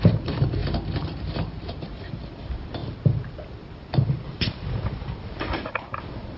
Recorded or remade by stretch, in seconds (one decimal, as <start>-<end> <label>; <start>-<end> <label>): 0.0-6.4 recorded